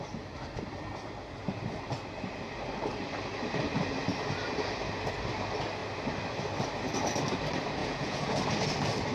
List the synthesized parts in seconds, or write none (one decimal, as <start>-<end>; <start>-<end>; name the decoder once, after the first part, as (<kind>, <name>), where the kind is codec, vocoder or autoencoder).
7.8-8.4 (vocoder, Vocos)